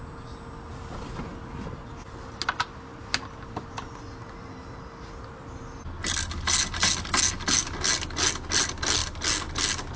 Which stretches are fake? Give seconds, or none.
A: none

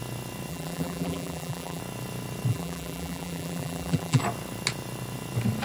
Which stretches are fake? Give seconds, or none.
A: 0.5-1.8 (vocoder, BigVGAN v2); 2.5-4.2

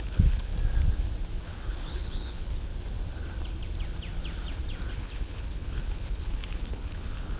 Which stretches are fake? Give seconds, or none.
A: 0.0-0.5 (codec, HILCodec); 1.4-2.7; 4.9-7.4

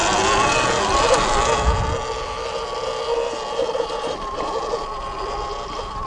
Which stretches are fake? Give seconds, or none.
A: none